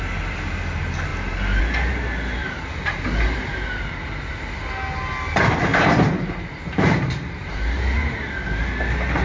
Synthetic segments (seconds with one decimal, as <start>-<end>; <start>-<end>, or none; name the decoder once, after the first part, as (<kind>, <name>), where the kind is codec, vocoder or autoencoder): 2.4-4.3 (vocoder, BigVGAN v2); 5.7-8.2